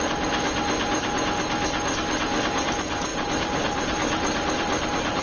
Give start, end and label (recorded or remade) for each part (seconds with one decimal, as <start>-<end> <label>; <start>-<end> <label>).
0.0-3.1 recorded; 3.1-5.2 remade